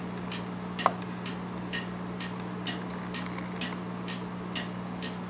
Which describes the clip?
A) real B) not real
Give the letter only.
A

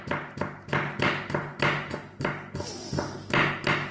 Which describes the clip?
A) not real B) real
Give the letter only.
B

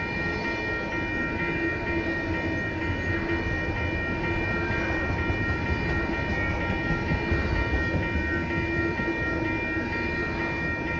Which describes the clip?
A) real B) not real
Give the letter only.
A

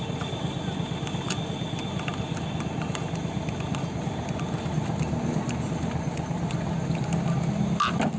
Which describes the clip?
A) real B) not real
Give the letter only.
A